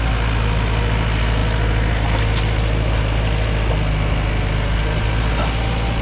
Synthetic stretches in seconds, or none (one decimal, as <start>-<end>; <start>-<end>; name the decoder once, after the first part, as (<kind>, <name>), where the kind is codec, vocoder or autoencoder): none